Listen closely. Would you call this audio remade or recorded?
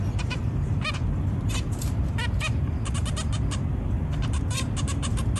remade